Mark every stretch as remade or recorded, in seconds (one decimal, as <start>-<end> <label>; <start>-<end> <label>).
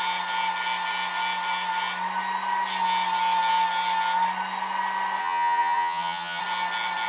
0.0-5.2 recorded; 5.2-6.4 remade; 6.4-7.1 recorded